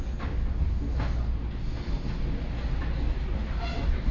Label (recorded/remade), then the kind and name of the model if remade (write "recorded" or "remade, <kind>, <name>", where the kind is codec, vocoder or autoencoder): recorded